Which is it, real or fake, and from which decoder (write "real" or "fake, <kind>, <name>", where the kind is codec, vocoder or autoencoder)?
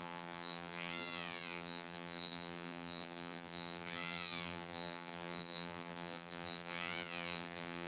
fake, vocoder, BigVGAN v2